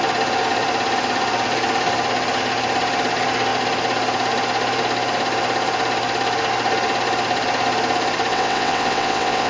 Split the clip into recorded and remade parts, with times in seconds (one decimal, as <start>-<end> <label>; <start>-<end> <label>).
0.0-8.3 recorded; 8.3-9.5 remade